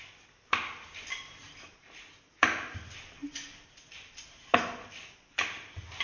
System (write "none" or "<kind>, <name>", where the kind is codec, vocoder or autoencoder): none